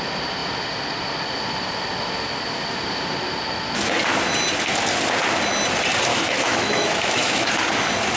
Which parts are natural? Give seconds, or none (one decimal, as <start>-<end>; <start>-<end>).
0.0-6.1; 7.5-8.2